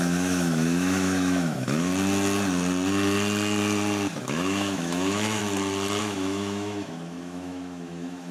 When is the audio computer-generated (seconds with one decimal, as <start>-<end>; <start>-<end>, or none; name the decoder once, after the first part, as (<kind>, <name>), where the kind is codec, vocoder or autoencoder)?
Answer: 0.0-1.9 (autoencoder, DAC-VAE); 4.2-5.4; 6.0-8.3

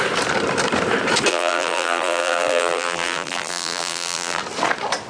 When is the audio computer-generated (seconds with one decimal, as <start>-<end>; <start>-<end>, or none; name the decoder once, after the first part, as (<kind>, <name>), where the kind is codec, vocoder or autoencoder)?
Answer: 1.3-4.4 (vocoder, BigVGAN v2)

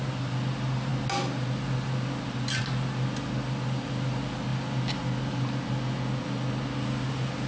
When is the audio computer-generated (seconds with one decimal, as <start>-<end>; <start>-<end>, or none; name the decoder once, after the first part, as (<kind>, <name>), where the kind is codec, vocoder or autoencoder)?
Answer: none

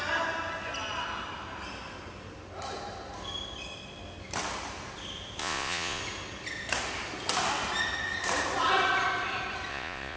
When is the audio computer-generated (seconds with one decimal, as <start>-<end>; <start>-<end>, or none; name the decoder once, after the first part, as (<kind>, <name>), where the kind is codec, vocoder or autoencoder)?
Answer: 5.4-6.0 (vocoder, Vocos); 9.7-10.2